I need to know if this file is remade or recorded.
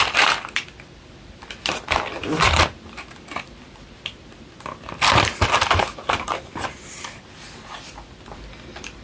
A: remade